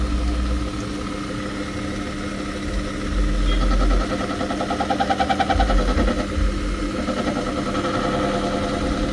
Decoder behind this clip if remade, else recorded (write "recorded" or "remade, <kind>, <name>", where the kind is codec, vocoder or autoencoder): recorded